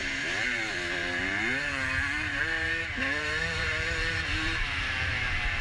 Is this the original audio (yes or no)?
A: no